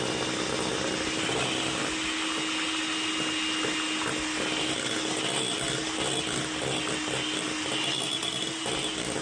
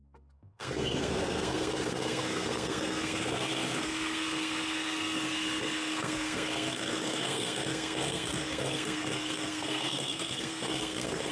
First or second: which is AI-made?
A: second